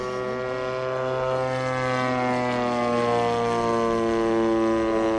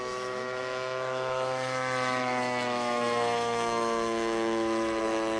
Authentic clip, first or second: first